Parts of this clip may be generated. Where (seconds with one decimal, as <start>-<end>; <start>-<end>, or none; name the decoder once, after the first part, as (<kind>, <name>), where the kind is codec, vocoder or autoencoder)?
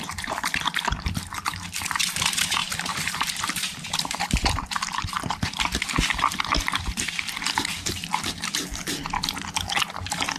2.6-4.6 (vocoder, BigVGAN v2)